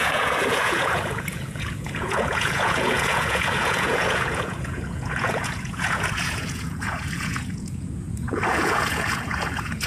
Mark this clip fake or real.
fake